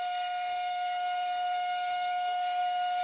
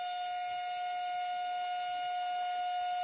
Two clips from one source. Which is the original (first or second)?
second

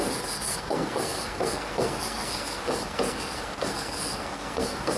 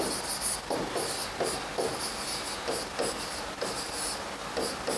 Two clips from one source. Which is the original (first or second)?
second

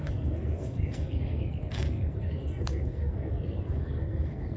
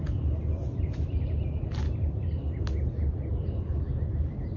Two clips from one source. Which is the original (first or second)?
second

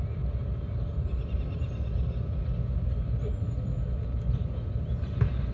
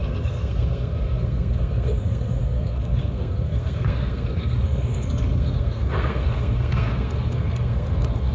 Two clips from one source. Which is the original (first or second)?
first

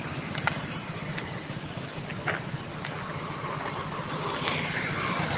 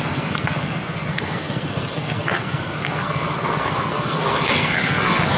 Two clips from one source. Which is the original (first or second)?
first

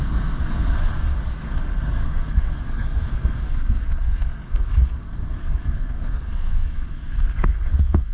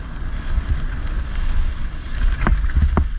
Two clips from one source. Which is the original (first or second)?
second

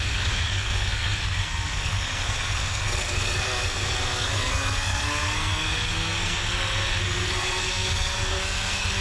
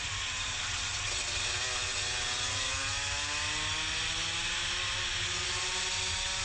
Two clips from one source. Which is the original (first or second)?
second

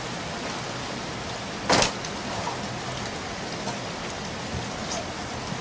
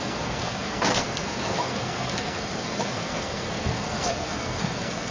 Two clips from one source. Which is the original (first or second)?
first